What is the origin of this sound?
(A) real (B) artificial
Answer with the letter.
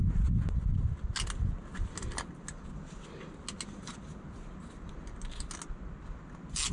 A